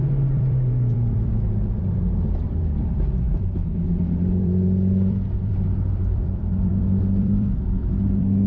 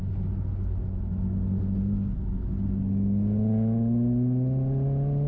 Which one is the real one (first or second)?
second